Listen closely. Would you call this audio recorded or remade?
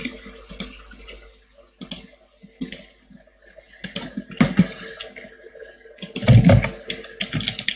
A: recorded